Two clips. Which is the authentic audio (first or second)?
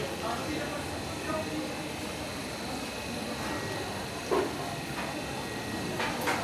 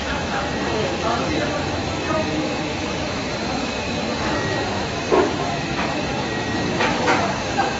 first